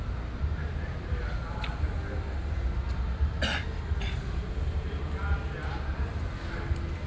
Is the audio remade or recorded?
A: recorded